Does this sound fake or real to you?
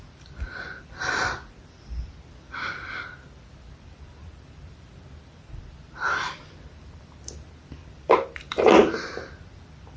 fake